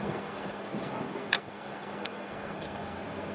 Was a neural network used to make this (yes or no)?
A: yes